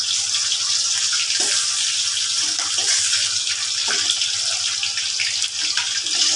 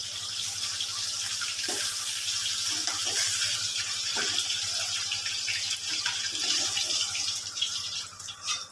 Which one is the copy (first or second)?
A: second